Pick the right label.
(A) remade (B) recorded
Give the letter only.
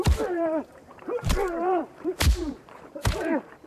A